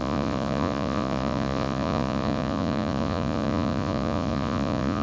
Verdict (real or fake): fake